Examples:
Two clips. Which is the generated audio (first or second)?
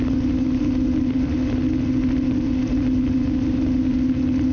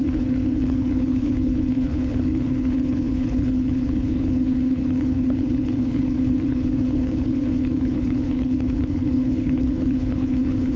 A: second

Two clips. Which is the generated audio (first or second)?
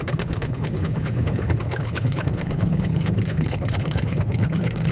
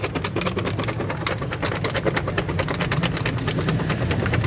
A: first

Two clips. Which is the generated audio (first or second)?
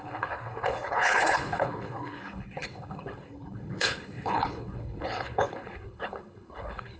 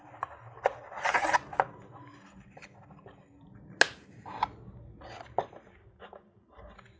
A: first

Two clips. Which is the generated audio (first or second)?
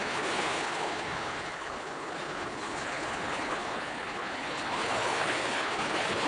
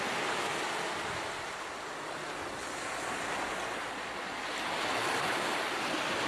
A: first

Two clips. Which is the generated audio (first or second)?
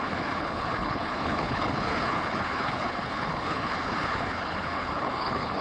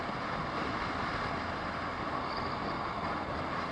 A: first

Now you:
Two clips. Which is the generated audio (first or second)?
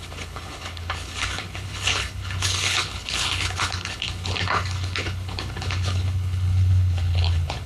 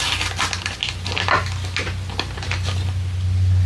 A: first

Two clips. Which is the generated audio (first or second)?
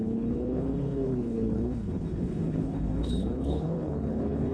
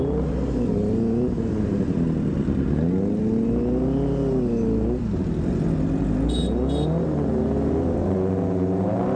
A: first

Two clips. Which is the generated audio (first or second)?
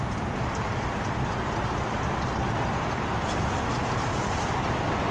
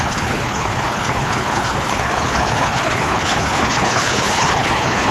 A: second